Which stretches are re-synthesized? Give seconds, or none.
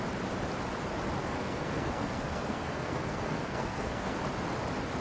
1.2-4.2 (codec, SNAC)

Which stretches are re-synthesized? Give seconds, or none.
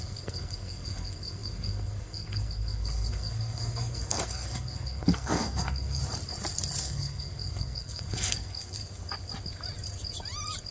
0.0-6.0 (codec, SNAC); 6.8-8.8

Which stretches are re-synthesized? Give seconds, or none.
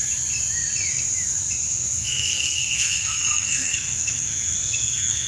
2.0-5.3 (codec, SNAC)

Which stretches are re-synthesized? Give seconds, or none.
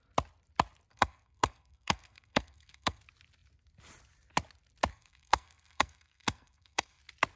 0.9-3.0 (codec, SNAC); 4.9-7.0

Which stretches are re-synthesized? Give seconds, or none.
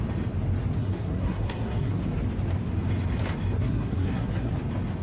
0.8-1.9 (codec, SNAC); 3.6-4.5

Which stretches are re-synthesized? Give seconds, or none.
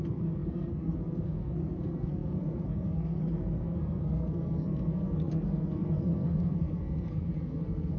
0.0-8.0 (codec, SNAC)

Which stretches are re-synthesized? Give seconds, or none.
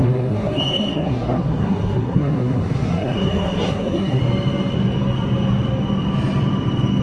0.0-4.2 (codec, SNAC)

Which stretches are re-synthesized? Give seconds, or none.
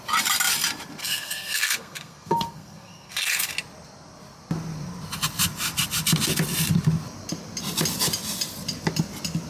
1.0-3.5 (codec, SNAC)